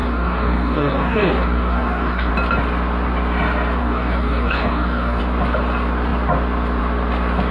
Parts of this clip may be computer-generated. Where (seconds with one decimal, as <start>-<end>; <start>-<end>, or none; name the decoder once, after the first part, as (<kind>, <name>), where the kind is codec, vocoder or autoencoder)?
0.0-2.3 (codec, DAC); 3.8-5.2